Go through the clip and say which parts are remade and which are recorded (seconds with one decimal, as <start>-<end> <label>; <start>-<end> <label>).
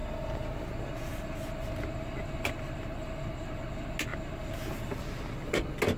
0.0-6.0 recorded